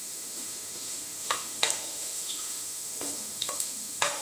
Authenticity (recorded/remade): remade